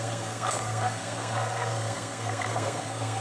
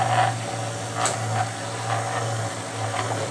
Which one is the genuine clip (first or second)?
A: second